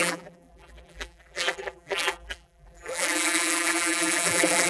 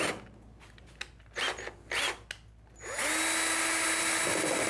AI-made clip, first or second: first